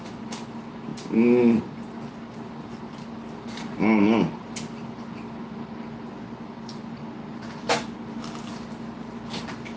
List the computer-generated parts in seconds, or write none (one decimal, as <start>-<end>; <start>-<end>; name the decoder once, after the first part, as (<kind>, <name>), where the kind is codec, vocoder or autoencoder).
none